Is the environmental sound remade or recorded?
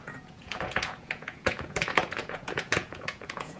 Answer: remade